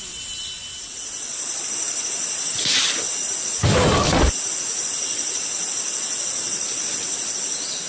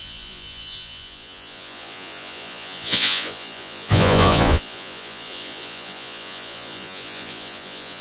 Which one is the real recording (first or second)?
first